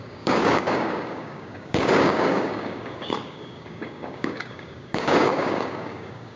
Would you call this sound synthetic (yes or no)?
yes